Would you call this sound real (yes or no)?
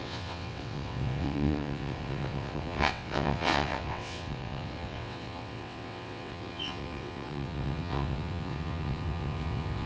no